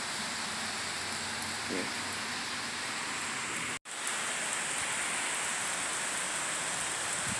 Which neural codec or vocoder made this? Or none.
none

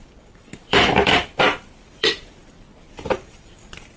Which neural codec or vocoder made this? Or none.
vocoder, BigVGAN v2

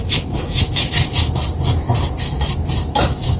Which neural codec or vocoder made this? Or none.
none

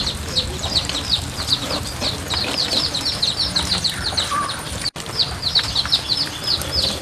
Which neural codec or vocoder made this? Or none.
vocoder, BigVGAN v2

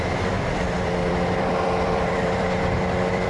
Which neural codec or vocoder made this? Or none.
vocoder, BigVGAN v2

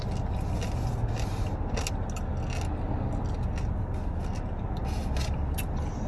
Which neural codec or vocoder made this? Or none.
none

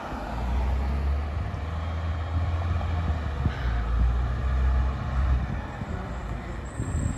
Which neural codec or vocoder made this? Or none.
none